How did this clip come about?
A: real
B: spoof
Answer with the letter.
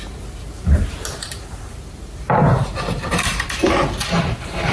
B